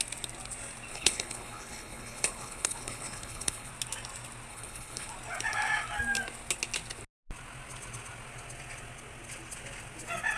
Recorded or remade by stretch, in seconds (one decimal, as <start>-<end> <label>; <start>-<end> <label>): 0.0-0.9 recorded; 0.9-3.7 remade; 3.7-4.5 recorded; 4.5-5.1 remade; 5.1-10.4 recorded